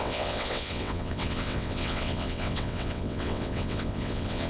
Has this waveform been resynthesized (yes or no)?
yes